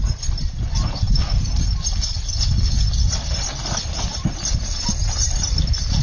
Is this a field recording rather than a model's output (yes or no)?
yes